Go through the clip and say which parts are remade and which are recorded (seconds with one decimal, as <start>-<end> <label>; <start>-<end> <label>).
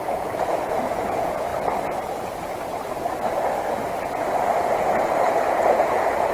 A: 0.0-1.5 remade; 1.5-5.3 recorded; 5.3-6.3 remade